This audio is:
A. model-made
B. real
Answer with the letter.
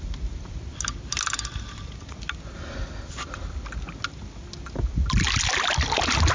B